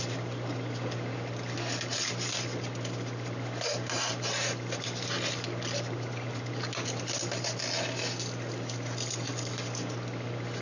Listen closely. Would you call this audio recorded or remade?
recorded